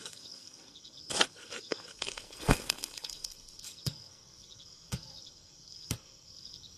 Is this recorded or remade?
remade